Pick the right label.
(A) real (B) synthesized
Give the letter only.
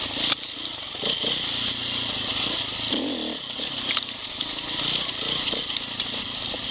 A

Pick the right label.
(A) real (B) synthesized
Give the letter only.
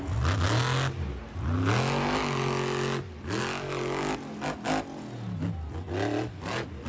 A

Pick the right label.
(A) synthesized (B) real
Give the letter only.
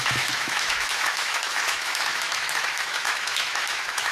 A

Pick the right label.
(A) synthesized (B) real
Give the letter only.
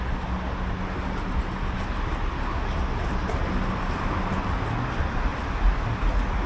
B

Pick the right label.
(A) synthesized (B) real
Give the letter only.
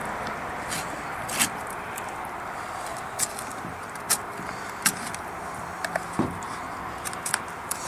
B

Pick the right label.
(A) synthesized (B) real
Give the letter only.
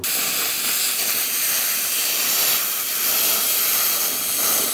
B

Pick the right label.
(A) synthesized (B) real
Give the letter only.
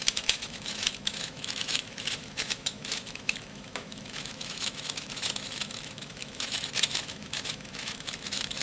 A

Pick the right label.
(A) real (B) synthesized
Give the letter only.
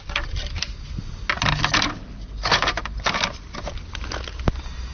A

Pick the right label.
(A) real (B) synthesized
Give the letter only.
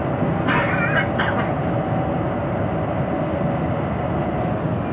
A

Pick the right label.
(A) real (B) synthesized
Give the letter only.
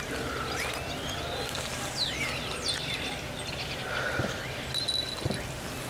A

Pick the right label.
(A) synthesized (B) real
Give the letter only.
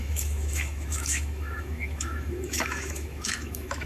A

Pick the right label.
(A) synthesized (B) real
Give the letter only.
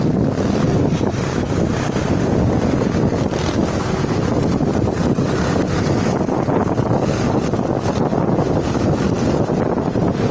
B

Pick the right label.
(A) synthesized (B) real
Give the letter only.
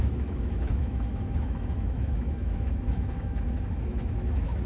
A